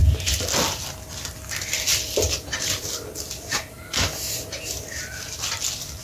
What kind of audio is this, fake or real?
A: real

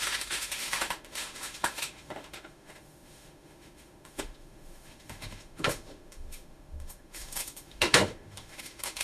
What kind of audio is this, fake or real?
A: fake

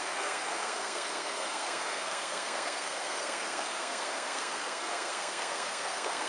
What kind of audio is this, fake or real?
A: fake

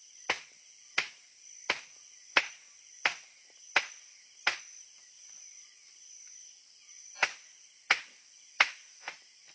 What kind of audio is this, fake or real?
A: real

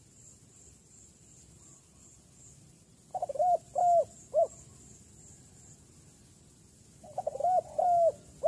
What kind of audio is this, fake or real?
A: real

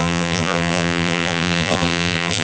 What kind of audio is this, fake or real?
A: fake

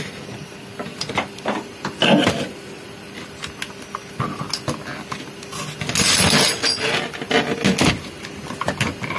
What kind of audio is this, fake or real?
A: real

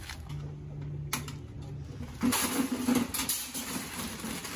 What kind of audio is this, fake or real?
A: real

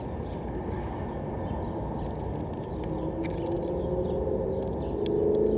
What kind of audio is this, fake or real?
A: real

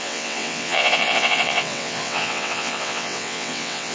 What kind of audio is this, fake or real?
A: fake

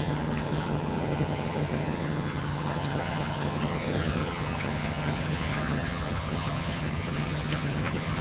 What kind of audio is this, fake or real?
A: fake